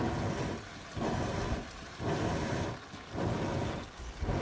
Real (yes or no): yes